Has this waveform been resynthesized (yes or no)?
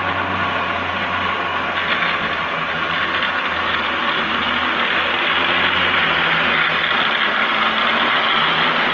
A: no